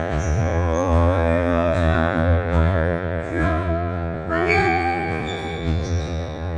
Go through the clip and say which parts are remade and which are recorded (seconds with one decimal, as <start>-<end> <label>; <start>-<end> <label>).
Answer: 0.0-6.6 remade